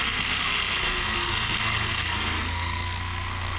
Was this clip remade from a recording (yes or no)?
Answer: yes